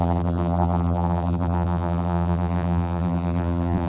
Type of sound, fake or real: fake